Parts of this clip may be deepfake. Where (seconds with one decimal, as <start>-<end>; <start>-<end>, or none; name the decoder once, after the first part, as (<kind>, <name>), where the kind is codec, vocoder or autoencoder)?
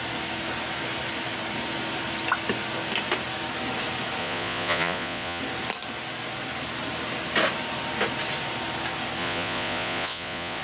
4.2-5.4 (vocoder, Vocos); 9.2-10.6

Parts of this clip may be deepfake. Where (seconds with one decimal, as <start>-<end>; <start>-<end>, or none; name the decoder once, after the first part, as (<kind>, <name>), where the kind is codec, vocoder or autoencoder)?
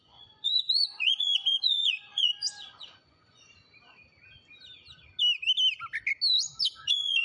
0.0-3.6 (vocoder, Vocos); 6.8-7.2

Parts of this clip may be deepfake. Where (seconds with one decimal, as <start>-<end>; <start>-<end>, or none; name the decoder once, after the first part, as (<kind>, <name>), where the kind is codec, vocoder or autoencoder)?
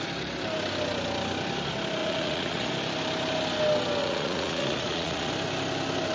2.0-2.7 (vocoder, Vocos); 4.0-5.3